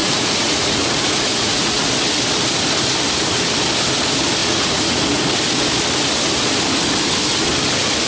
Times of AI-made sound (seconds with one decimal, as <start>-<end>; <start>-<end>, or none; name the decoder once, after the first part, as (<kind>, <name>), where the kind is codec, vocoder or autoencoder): 0.0-1.8 (vocoder, Vocos); 4.4-5.0